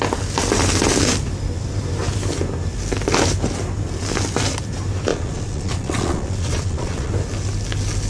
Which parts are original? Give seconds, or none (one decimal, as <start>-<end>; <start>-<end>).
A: 0.0-5.1; 7.1-8.1